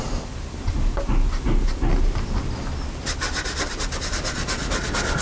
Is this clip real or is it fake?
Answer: real